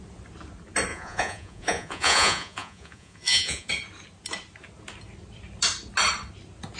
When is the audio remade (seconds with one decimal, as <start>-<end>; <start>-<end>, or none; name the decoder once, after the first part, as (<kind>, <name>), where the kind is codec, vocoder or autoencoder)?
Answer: 0.9-3.7 (vocoder, Vocos)